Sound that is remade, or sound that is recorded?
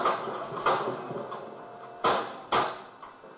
recorded